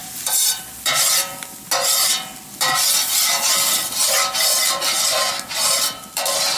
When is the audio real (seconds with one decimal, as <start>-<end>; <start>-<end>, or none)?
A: 0.6-6.6